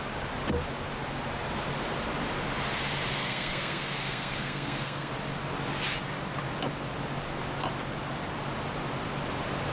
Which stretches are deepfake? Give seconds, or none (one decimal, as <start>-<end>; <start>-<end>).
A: 3.2-5.1